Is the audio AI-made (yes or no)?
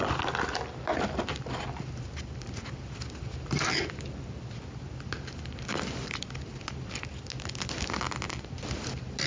no